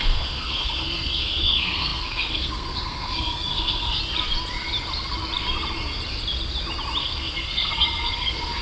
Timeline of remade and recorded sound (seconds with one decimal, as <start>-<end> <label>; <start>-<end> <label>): 0.0-4.0 remade; 4.0-7.0 recorded; 7.0-8.6 remade